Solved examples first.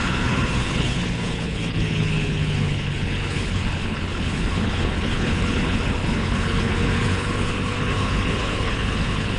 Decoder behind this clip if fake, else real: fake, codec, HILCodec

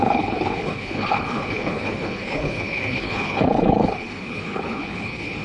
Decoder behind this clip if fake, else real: fake, codec, HILCodec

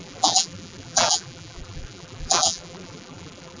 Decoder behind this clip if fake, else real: fake, vocoder, BigVGAN v2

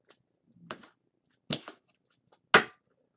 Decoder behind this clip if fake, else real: real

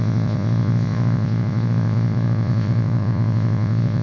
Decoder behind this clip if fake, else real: fake, vocoder, Vocos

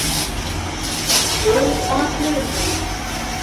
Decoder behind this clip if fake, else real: real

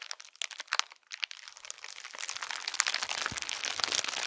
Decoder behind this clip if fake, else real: real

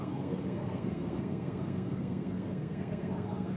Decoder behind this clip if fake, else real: fake, codec, SNAC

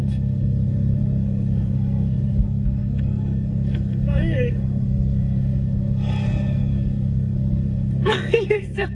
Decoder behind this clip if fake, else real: fake, codec, SNAC